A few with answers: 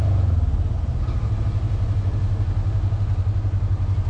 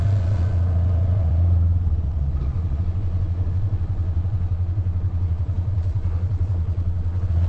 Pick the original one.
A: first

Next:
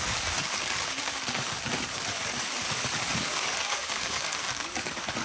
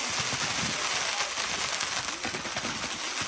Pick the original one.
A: second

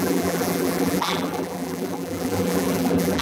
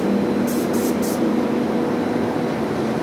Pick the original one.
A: second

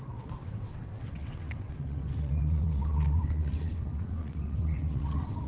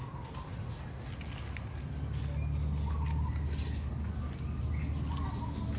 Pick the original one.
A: second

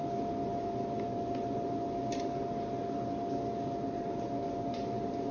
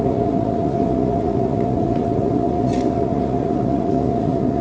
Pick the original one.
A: first